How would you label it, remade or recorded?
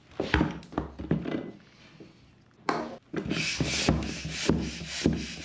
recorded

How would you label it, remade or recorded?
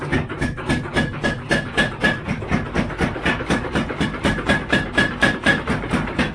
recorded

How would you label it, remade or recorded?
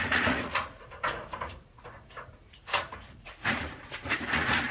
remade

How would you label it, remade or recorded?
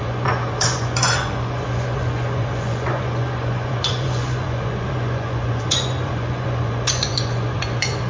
remade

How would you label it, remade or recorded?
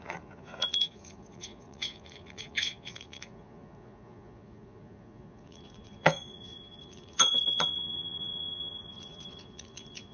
remade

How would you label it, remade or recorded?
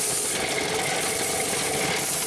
recorded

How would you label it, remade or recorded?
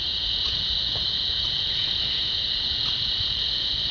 remade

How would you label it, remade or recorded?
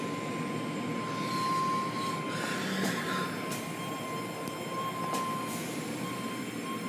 recorded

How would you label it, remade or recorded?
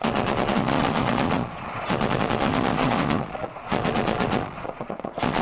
remade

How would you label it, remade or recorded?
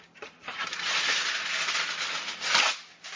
recorded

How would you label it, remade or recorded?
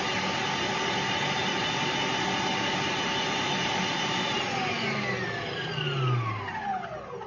recorded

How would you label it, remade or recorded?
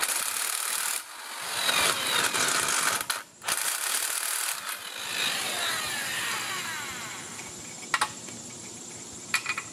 recorded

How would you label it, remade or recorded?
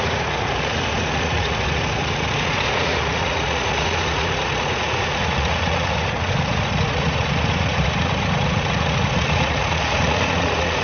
remade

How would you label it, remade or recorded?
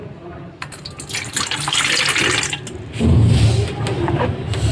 recorded